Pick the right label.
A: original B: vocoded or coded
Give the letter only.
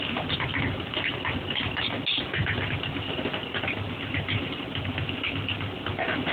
A